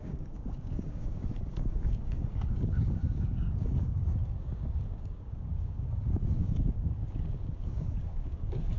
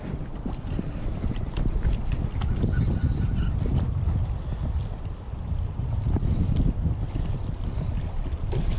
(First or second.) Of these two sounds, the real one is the second